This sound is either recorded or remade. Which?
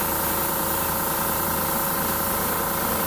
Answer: remade